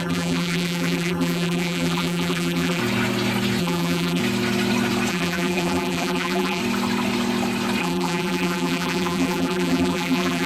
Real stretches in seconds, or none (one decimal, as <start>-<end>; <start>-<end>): 2.8-3.6; 4.2-5.1; 6.6-7.8